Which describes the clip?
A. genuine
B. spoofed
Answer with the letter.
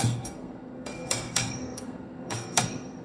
B